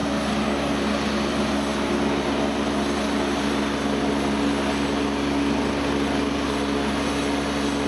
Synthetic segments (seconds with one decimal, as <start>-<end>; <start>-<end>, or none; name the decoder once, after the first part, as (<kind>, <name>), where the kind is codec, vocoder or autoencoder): none